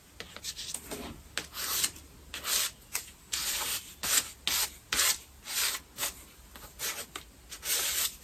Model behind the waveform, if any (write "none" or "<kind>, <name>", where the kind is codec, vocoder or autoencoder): none